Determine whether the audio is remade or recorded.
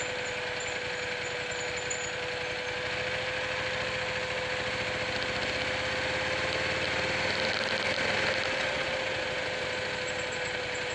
recorded